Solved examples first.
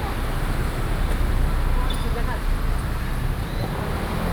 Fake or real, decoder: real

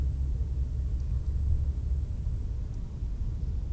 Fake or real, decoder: real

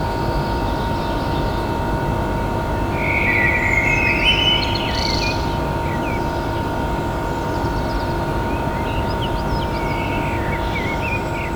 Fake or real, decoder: real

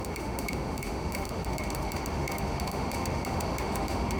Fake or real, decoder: fake, autoencoder, DAC-VAE